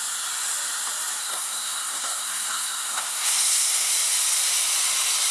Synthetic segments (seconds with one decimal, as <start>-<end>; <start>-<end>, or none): 1.2-3.9

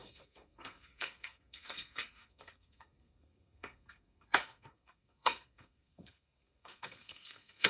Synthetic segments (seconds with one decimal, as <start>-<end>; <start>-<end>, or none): 0.0-7.7